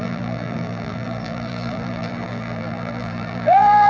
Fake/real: fake